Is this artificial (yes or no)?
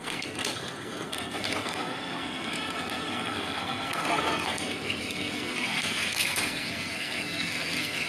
yes